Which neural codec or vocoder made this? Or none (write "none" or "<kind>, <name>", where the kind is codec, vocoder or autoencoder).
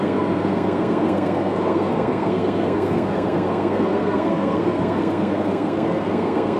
codec, SNAC